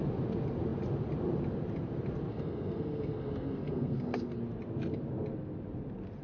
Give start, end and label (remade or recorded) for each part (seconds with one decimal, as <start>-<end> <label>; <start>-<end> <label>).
0.0-2.3 recorded; 2.3-4.4 remade; 4.4-6.2 recorded